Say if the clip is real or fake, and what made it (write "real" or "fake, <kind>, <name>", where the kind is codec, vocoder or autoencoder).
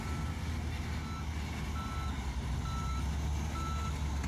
real